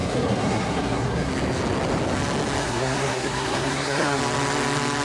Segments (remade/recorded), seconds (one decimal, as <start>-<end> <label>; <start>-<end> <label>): 0.0-1.3 remade; 1.3-2.6 recorded; 2.6-4.2 remade; 4.2-5.0 recorded